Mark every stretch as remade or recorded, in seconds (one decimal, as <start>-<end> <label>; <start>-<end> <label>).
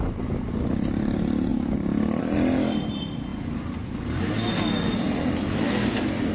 0.0-6.3 recorded